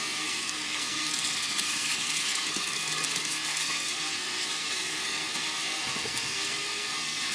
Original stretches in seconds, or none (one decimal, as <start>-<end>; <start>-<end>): none